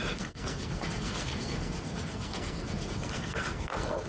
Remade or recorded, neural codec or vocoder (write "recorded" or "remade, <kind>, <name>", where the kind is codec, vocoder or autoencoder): remade, codec, SNAC